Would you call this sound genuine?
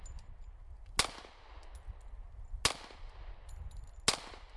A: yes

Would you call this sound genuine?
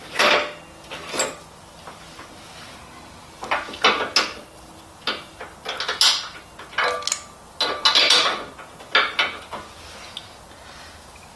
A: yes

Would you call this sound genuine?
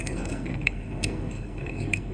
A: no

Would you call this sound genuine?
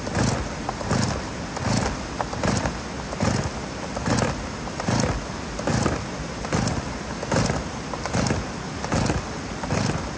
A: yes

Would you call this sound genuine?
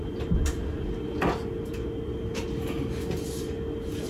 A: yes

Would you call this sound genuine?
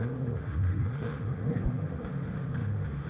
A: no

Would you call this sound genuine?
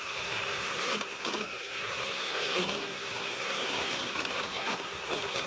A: no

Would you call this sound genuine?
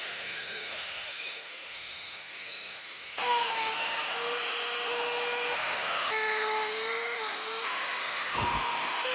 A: no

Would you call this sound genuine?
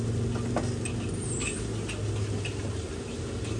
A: yes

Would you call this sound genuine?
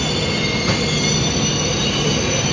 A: yes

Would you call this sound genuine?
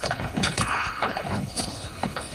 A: no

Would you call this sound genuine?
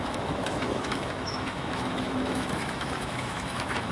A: no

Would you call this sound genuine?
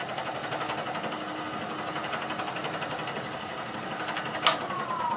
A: yes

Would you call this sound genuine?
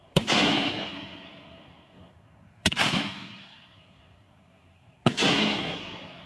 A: no